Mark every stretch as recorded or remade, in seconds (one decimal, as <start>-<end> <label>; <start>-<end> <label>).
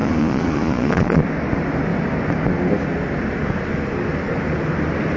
0.0-1.2 remade; 1.2-5.2 recorded